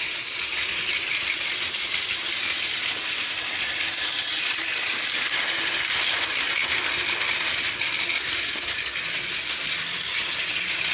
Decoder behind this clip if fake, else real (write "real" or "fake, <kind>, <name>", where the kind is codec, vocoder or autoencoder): real